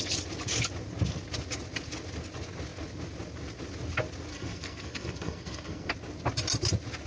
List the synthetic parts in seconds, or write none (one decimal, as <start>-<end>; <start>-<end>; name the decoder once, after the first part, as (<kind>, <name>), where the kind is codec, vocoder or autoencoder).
4.3-5.9 (codec, SNAC)

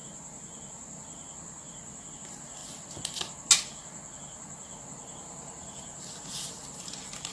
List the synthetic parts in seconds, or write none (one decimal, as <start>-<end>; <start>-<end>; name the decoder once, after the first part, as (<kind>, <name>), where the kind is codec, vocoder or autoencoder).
none

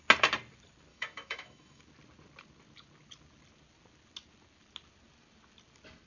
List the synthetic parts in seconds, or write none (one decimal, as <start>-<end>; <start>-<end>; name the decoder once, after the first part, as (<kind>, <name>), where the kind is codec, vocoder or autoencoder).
0.9-1.8 (autoencoder, DAC-VAE)

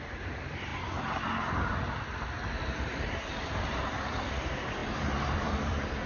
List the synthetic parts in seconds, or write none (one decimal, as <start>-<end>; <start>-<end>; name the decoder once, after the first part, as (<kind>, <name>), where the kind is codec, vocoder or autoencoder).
0.0-0.7 (vocoder, BigVGAN v2); 3.0-6.1

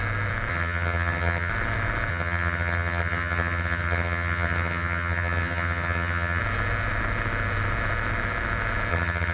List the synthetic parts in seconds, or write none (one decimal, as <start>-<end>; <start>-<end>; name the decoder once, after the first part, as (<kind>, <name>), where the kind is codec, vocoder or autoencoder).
0.5-1.5 (vocoder, HiFi-GAN); 2.1-6.4; 8.9-9.3